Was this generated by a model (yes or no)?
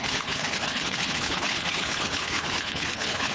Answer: yes